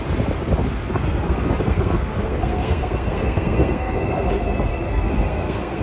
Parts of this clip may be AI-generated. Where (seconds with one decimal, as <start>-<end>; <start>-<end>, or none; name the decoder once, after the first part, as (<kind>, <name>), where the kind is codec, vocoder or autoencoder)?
1.0-4.3 (codec, SNAC); 4.7-5.8